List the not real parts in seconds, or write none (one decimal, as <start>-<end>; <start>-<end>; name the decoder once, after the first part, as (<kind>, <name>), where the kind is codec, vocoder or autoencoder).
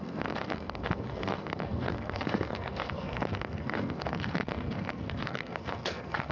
0.0-6.3 (codec, SNAC)